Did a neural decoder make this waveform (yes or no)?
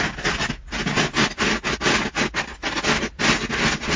no